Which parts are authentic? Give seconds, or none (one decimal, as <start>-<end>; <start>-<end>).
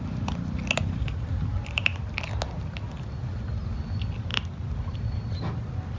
0.0-6.0